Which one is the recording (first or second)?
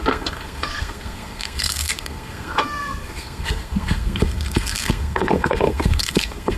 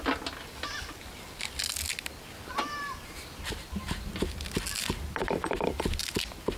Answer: second